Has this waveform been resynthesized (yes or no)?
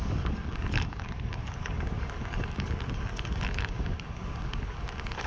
yes